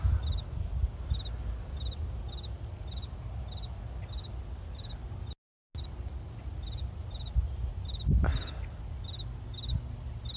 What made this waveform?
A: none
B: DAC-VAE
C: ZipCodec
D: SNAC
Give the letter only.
A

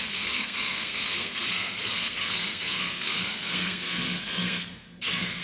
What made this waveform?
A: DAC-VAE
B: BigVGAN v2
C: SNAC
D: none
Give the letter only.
C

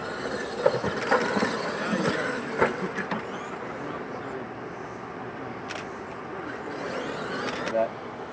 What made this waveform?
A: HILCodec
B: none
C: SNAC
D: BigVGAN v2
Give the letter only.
B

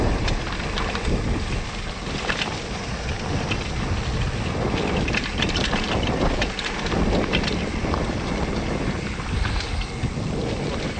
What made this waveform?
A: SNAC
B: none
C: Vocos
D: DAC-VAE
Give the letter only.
B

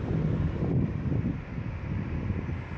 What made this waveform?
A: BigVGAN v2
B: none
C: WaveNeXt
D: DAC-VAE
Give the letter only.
B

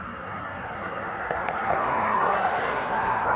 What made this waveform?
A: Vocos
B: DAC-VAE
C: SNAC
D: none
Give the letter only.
C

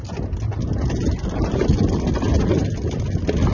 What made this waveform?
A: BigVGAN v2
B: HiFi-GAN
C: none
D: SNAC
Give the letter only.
C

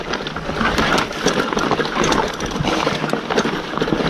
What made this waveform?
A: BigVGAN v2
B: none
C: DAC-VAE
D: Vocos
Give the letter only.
B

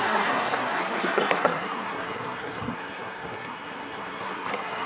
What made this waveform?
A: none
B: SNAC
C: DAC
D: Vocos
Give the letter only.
B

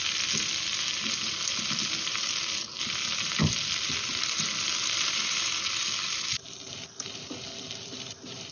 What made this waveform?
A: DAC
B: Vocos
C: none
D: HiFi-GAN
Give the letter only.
C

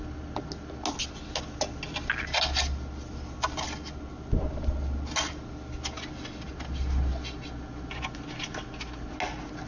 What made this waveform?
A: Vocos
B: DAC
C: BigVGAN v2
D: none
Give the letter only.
D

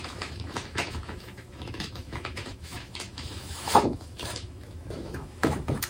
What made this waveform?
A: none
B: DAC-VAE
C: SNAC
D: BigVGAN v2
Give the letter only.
B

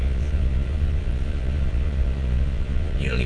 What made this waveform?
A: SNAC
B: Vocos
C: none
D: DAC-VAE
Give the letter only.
B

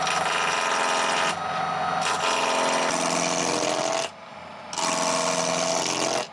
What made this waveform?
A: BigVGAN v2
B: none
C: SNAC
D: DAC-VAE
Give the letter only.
B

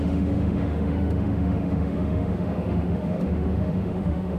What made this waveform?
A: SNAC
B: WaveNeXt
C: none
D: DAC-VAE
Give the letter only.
D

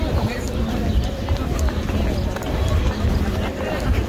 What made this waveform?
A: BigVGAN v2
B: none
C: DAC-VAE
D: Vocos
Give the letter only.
B